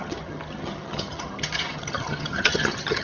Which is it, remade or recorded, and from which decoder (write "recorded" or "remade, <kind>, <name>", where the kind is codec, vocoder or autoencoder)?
remade, vocoder, HiFi-GAN